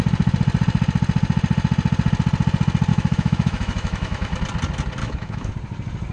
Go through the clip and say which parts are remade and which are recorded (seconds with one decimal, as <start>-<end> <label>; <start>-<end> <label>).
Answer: 0.0-2.9 recorded; 2.9-4.4 remade; 4.4-5.0 recorded; 5.0-5.5 remade; 5.5-6.1 recorded

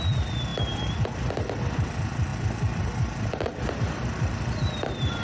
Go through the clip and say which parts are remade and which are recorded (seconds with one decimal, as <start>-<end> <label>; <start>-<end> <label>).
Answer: 0.0-5.2 recorded

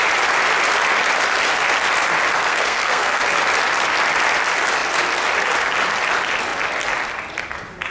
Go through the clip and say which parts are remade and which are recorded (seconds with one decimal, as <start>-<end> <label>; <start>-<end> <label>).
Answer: 0.0-2.5 recorded; 2.5-3.2 remade; 3.2-7.9 recorded

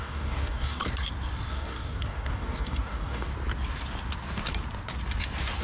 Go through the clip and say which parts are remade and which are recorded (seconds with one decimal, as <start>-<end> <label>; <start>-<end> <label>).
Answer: 0.0-0.8 remade; 0.8-1.5 recorded; 1.5-3.3 remade; 3.3-5.6 recorded

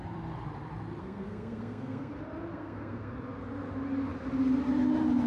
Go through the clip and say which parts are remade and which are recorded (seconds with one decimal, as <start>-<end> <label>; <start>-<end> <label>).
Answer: 0.0-1.0 recorded; 1.0-2.1 remade; 2.1-2.5 recorded; 2.5-3.1 remade; 3.1-5.3 recorded